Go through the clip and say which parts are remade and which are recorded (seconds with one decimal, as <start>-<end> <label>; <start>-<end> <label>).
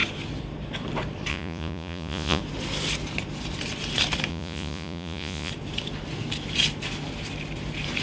0.0-1.3 recorded; 1.3-2.4 remade; 2.4-4.3 recorded; 4.3-5.5 remade; 5.5-8.0 recorded